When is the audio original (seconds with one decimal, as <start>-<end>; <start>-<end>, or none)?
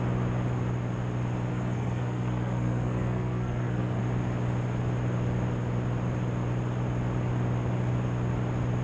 0.0-1.5; 4.0-8.8